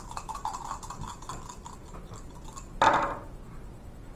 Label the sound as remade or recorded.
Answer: recorded